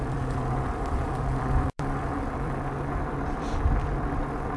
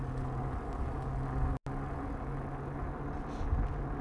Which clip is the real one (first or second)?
second